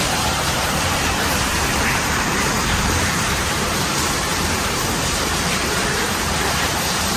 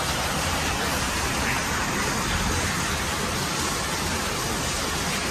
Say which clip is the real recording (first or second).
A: second